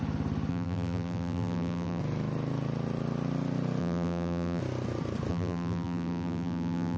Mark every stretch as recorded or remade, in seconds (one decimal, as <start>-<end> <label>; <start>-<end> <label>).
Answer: 0.0-0.5 recorded; 0.5-2.0 remade; 2.0-3.8 recorded; 3.8-4.6 remade; 4.6-5.3 recorded; 5.3-7.0 remade